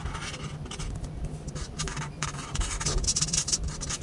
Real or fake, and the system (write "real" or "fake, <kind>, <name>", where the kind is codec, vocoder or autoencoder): real